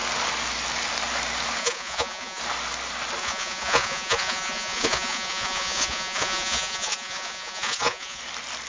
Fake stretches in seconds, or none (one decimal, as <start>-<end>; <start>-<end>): 1.6-2.4; 3.2-8.2